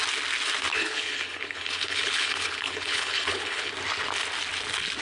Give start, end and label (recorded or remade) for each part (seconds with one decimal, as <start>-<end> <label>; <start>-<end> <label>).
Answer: 0.0-0.7 recorded; 0.7-3.7 remade; 3.7-5.0 recorded